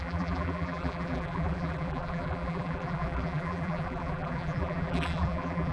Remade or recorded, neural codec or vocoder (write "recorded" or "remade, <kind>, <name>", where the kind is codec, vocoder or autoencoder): remade, vocoder, BigVGAN v2